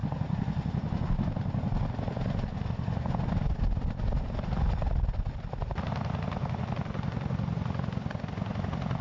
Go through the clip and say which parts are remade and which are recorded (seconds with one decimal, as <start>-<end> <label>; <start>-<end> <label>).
0.0-9.0 recorded